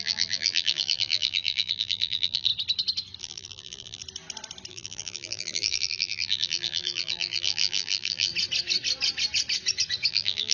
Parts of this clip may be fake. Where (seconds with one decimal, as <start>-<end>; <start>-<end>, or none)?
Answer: 0.0-2.5; 3.2-4.0; 4.7-8.3; 10.1-10.5